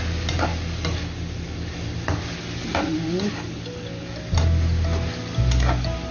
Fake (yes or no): no